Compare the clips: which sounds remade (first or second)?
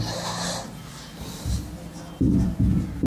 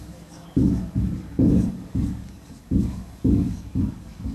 second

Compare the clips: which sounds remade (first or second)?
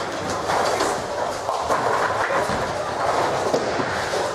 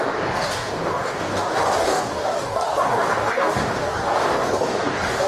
second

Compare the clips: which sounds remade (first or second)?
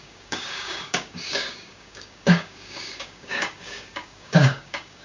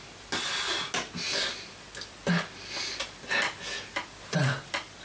first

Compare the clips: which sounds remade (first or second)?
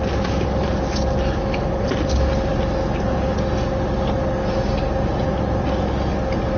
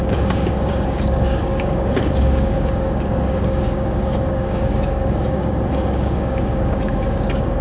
second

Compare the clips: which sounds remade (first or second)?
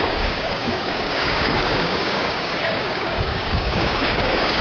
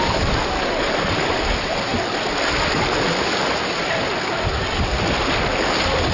first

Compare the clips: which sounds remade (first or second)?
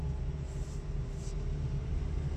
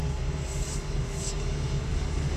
second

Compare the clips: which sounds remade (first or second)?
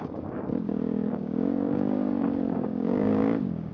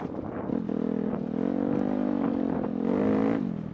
first